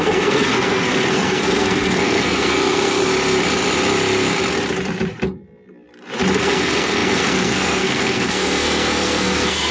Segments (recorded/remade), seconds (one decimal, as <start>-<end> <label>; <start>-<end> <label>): 0.0-3.1 remade; 3.1-6.4 recorded; 6.4-9.7 remade